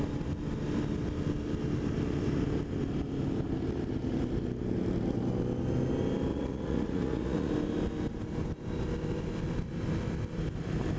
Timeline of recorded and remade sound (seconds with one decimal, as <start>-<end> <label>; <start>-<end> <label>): 0.0-6.3 recorded; 6.3-7.5 remade; 7.5-11.0 recorded